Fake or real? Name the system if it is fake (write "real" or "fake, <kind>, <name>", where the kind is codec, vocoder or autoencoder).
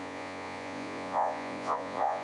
fake, vocoder, Vocos